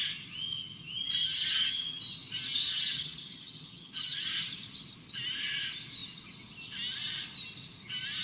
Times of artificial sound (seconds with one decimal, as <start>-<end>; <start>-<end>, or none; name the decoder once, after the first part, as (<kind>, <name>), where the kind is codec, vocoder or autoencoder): 1.2-2.0 (vocoder, HiFi-GAN); 2.6-4.3